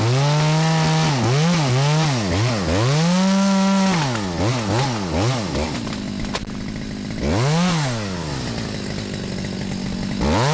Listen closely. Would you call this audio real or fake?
real